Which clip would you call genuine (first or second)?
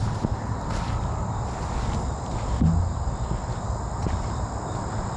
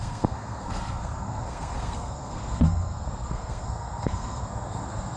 first